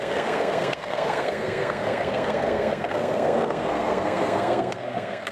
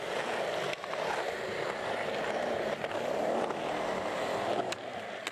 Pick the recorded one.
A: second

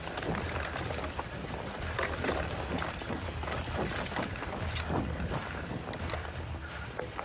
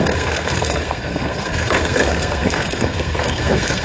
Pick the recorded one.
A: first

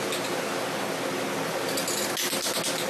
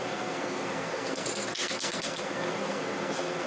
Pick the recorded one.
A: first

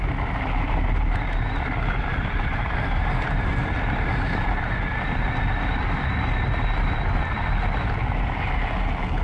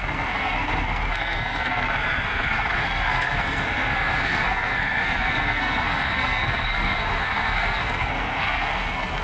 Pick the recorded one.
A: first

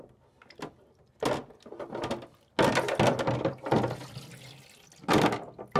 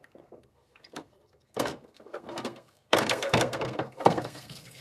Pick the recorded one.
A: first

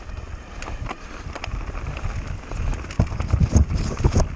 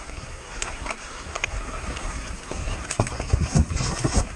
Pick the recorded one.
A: first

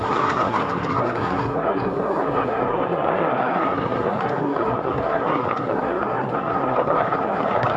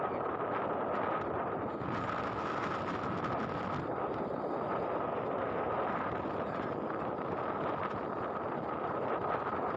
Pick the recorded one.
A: second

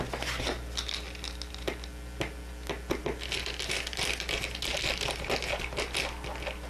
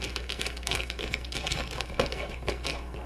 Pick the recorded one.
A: first